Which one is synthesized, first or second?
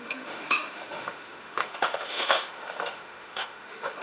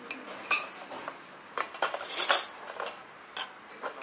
first